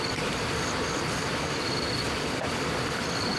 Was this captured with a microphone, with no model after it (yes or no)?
yes